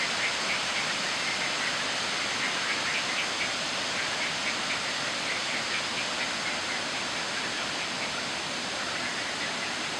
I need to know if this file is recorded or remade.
recorded